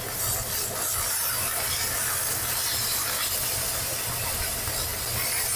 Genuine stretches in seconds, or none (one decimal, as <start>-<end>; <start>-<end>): 0.0-5.6